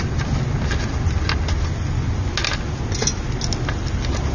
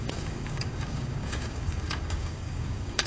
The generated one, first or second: second